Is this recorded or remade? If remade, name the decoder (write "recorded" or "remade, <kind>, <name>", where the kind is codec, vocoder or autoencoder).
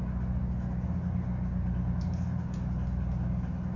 recorded